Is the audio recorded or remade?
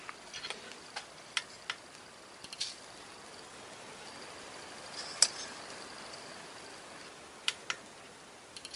recorded